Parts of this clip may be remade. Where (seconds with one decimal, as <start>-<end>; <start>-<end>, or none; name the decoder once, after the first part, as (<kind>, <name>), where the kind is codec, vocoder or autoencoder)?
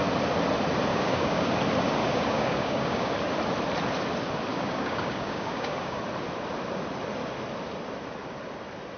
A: 0.9-1.5 (codec, DAC); 2.0-3.1; 4.5-6.0